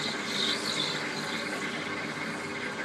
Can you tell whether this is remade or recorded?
recorded